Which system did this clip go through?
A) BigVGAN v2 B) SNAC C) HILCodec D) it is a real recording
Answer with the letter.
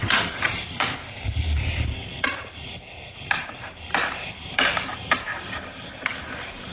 A